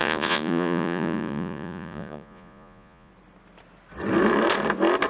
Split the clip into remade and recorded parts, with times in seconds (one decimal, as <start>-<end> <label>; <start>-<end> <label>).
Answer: 0.0-3.1 remade; 3.1-5.1 recorded